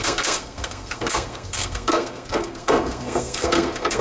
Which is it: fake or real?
fake